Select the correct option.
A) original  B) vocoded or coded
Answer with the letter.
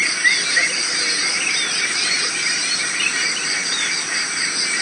A